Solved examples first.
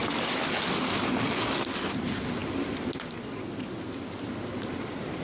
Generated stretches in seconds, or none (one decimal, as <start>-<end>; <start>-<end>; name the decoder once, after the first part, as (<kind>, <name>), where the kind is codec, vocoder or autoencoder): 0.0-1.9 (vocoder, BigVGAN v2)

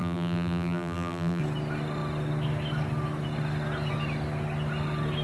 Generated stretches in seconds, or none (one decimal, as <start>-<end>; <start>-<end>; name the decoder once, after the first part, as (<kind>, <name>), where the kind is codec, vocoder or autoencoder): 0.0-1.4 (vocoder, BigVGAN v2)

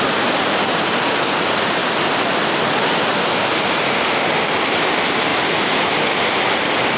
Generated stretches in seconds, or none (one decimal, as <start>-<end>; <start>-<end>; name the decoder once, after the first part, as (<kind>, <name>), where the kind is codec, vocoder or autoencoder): none

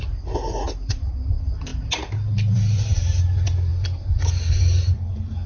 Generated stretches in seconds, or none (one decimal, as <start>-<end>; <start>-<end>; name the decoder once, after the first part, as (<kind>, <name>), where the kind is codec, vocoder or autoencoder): none

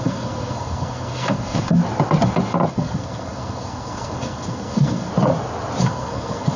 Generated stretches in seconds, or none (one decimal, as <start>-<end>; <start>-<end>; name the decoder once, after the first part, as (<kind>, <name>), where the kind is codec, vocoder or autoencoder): 0.0-1.8 (codec, SNAC); 2.7-5.1; 5.8-6.6

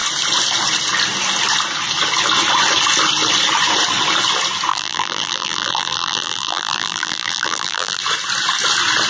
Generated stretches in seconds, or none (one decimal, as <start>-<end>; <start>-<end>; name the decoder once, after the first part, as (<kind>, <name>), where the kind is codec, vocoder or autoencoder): 4.7-8.0 (vocoder, BigVGAN v2)

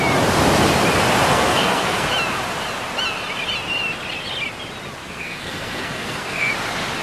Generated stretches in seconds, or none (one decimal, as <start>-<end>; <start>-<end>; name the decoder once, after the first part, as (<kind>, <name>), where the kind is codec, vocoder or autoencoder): 1.3-2.1 (codec, SNAC); 5.0-6.5

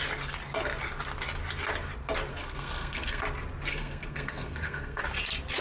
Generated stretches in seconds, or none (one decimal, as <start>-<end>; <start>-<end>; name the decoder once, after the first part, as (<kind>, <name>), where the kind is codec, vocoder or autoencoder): 2.3-3.2 (codec, SNAC); 3.7-5.0